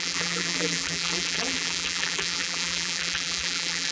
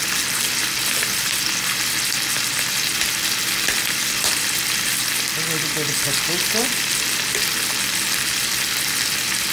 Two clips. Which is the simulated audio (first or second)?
first